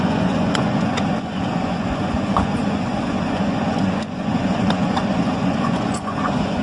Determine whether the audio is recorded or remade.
remade